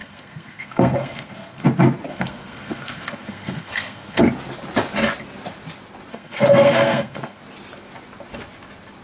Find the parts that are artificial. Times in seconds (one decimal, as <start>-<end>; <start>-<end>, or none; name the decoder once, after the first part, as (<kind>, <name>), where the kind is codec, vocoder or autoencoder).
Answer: 0.0-1.6 (codec, SNAC); 2.1-4.2; 6.1-7.4